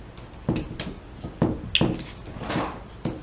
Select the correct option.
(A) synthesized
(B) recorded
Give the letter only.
B